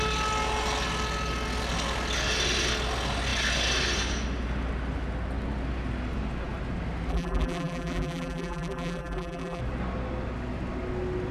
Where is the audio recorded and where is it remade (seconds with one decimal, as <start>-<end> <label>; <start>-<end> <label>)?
0.0-7.1 recorded; 7.1-9.6 remade; 9.6-11.3 recorded